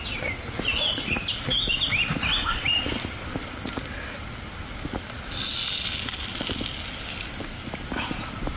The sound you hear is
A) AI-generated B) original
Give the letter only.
B